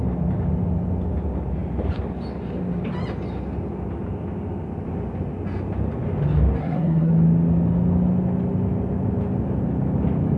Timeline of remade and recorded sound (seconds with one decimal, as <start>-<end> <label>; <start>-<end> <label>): 0.0-6.6 recorded; 6.6-7.1 remade; 7.1-10.4 recorded

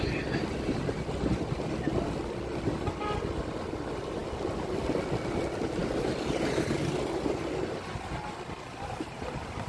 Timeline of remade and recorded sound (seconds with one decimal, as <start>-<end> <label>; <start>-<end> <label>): 0.0-9.7 recorded

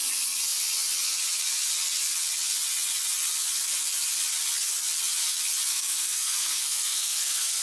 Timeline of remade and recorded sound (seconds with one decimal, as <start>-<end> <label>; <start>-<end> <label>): 0.0-5.7 recorded; 5.7-7.6 remade

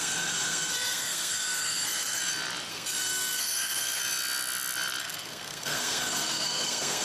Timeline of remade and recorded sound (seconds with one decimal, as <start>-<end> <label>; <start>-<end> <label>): 0.0-2.2 remade; 2.2-2.7 recorded; 2.7-4.0 remade; 4.0-5.0 recorded; 5.0-7.0 remade

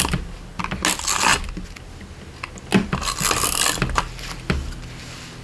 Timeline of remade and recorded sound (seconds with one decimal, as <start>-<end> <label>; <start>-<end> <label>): 0.0-5.4 recorded

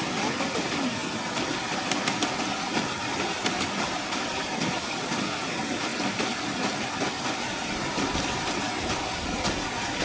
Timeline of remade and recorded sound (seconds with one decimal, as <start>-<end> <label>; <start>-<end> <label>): 0.0-10.0 recorded

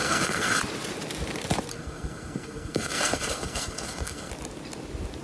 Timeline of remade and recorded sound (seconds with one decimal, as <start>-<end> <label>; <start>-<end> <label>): 0.0-0.6 remade; 0.6-1.7 recorded; 1.7-4.3 remade; 4.3-5.2 recorded